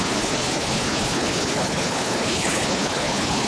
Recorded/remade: remade